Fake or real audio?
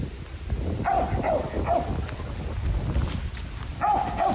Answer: real